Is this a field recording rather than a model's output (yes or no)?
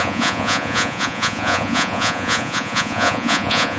no